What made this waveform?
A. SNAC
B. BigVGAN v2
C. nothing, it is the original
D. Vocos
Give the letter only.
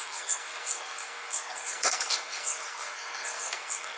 A